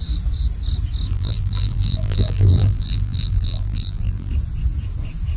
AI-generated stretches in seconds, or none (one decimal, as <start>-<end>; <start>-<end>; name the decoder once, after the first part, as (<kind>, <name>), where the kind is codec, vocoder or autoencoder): 1.1-4.3 (vocoder, BigVGAN v2)